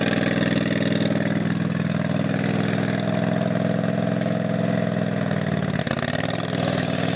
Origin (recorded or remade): recorded